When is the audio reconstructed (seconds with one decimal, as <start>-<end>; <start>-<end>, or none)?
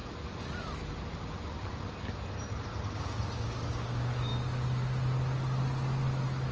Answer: 2.9-4.3